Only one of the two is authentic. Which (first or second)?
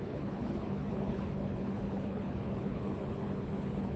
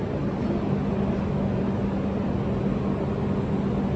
second